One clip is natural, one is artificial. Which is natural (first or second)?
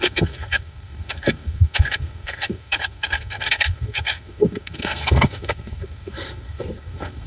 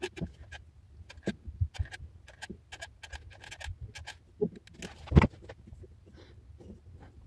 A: second